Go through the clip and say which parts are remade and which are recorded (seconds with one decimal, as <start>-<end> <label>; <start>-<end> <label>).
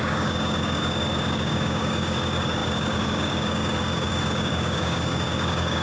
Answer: 0.0-5.8 remade